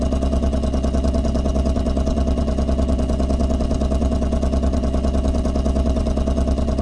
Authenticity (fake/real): fake